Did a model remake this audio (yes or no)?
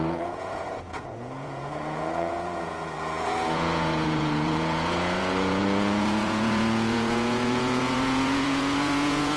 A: yes